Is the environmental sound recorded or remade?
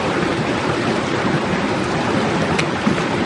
recorded